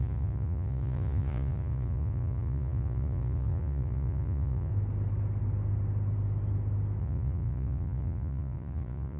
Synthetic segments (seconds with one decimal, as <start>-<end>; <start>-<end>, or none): 0.0-4.7; 7.0-9.2